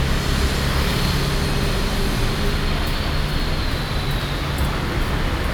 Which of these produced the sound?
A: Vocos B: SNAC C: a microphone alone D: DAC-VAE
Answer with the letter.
C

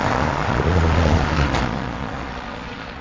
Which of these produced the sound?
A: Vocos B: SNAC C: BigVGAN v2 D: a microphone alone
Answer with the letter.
A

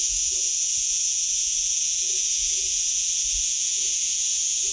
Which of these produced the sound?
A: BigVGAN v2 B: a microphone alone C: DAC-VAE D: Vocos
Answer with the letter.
D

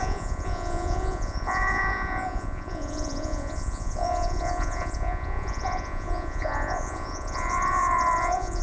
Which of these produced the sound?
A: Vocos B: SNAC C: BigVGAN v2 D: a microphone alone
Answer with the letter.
A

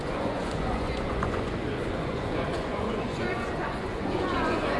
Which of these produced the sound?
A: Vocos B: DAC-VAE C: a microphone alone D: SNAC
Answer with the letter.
A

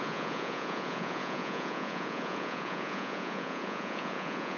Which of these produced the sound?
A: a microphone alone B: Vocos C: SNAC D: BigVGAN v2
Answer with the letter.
B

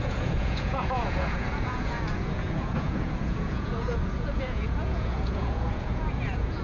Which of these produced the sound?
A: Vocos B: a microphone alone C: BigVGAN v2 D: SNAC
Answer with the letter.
A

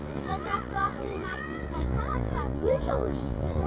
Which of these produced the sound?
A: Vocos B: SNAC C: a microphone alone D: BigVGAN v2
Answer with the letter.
A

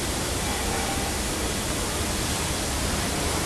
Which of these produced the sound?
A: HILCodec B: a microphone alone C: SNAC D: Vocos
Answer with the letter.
B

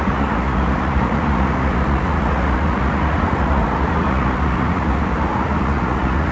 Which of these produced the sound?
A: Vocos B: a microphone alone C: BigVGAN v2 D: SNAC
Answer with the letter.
A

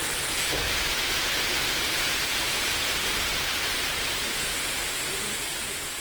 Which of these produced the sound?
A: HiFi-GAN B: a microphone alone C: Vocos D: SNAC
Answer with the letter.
C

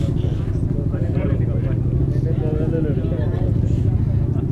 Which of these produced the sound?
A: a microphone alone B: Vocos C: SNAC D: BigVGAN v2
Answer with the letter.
A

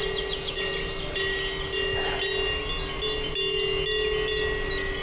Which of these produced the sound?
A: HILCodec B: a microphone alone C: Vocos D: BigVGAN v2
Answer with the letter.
B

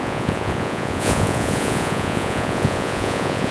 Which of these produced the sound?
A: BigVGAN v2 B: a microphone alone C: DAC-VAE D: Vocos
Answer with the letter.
D